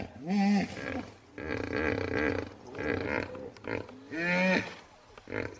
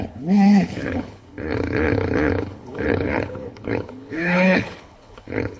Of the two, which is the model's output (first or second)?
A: second